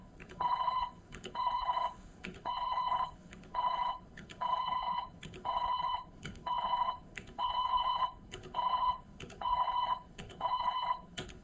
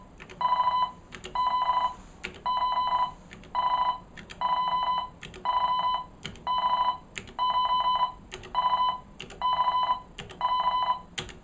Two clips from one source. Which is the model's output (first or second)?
first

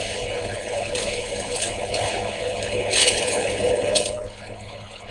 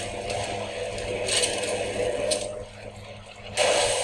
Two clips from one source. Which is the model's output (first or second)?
first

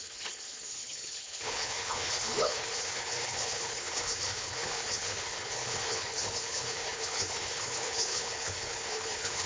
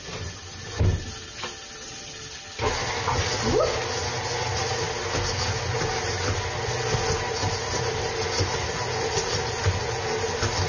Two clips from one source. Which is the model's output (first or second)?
first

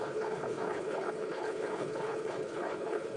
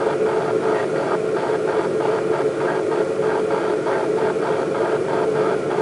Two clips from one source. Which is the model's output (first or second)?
first